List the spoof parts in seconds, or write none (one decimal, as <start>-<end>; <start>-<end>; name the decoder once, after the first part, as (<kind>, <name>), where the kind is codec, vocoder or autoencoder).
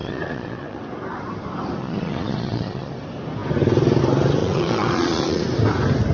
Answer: 0.0-0.8 (vocoder, Vocos); 1.8-2.9; 4.4-5.4